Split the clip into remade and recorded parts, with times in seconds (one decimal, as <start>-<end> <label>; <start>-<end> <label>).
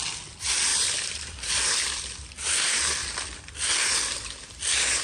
0.0-0.7 recorded; 0.7-2.3 remade; 2.3-5.0 recorded